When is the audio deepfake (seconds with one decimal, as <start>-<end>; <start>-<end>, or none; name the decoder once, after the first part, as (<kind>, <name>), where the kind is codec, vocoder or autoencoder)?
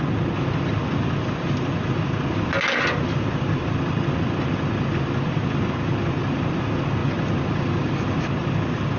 none